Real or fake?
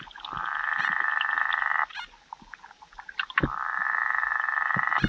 real